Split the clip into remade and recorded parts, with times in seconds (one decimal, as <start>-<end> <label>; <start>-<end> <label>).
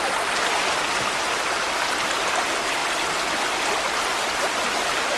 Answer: 0.0-5.2 recorded